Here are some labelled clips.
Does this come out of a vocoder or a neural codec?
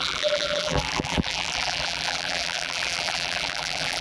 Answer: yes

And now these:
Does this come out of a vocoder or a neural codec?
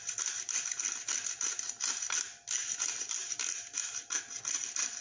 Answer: no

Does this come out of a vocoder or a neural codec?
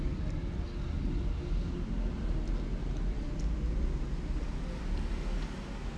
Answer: no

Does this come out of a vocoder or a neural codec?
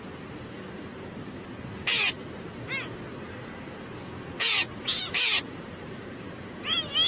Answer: no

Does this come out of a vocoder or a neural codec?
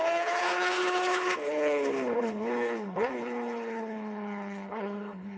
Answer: yes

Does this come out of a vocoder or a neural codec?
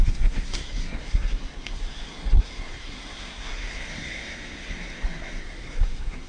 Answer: yes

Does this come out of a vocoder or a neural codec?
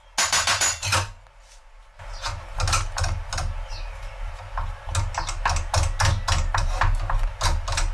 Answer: no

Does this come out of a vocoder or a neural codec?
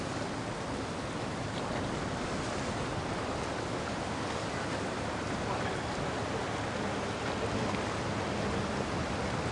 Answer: no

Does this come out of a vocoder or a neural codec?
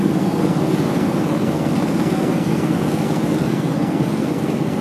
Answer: yes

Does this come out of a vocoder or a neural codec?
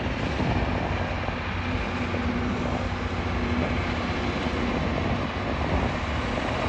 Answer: no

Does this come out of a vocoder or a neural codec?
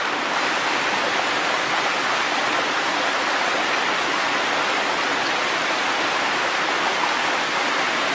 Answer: no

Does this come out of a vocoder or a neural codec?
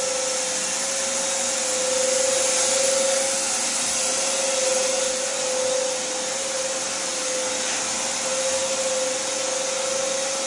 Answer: no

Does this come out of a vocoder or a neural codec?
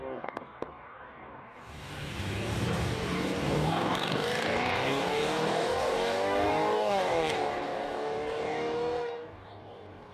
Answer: yes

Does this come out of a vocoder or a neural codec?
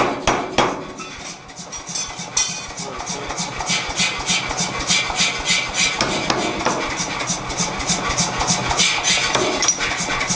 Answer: no